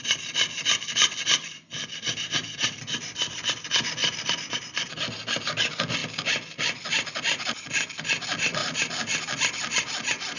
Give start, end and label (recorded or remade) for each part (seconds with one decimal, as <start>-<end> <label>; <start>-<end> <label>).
0.0-2.1 recorded; 2.1-2.8 remade; 2.8-4.0 recorded; 4.0-4.9 remade; 4.9-8.6 recorded; 8.6-9.2 remade; 9.2-10.4 recorded